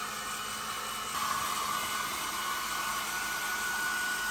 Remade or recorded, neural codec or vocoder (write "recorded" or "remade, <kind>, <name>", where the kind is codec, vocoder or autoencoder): recorded